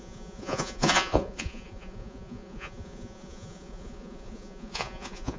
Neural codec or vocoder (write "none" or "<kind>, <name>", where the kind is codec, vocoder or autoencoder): vocoder, Vocos